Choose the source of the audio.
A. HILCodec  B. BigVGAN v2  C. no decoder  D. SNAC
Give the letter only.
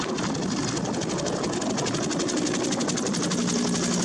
C